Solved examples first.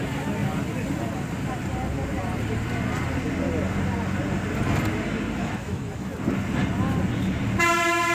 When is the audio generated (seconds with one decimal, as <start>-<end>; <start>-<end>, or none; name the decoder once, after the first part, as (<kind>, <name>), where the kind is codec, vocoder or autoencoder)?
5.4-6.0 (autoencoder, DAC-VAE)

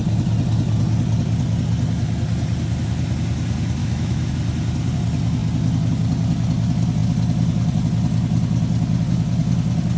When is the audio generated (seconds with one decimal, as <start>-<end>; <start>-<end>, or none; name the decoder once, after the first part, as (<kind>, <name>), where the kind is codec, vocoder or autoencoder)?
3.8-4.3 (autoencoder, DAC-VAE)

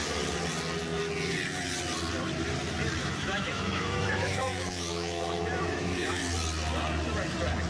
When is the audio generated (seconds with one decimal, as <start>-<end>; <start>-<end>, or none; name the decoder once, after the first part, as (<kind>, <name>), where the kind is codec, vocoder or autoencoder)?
3.0-6.2 (autoencoder, DAC-VAE)

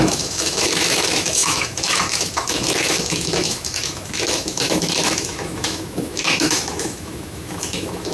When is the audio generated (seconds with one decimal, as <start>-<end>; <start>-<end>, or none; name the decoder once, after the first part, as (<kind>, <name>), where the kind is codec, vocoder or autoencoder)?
0.0-8.1 (autoencoder, DAC-VAE)

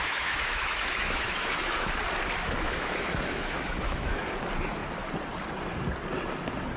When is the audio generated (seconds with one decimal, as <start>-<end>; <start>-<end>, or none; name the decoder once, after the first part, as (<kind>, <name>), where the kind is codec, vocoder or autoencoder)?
0.0-1.9 (autoencoder, DAC-VAE); 2.4-4.2

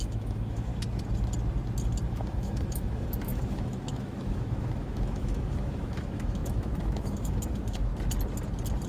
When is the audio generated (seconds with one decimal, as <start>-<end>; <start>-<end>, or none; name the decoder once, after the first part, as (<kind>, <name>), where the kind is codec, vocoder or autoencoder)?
0.0-0.7 (autoencoder, DAC-VAE); 2.1-7.9

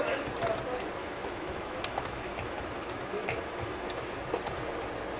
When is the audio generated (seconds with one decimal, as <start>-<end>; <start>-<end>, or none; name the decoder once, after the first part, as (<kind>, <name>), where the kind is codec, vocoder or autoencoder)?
1.0-4.0 (autoencoder, DAC-VAE)